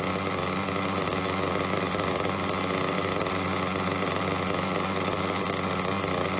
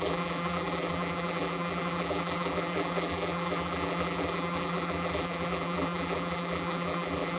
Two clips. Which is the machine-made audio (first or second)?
second